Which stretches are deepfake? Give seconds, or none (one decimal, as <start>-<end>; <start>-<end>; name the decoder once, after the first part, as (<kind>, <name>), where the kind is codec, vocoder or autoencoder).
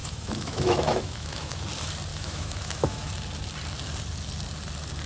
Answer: 0.0-1.6 (autoencoder, DAC-VAE); 2.1-3.1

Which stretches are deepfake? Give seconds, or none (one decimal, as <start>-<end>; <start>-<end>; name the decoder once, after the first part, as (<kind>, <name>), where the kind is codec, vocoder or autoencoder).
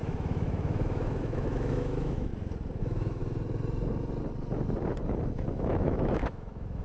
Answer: 0.0-2.3 (autoencoder, DAC-VAE); 2.8-3.2; 5.5-6.8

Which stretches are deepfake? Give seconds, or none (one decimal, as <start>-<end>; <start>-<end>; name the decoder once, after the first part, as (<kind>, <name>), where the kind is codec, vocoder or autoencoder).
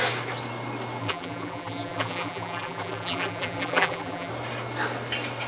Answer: 1.0-4.3 (vocoder, BigVGAN v2)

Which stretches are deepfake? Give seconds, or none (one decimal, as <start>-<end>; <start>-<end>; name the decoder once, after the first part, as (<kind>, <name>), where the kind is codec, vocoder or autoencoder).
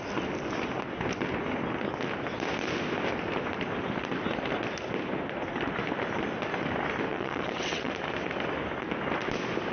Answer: 7.1-7.9 (vocoder, WaveNeXt)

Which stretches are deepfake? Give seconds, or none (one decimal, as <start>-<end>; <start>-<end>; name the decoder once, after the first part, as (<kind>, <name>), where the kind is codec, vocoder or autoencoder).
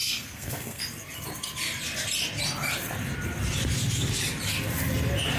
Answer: 0.0-0.8 (codec, SNAC)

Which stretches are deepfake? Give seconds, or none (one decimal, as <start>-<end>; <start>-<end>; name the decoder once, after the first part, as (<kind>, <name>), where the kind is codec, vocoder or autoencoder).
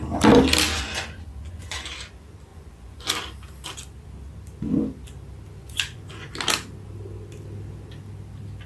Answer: 0.7-1.9 (vocoder, Vocos); 2.5-3.1; 5.6-6.3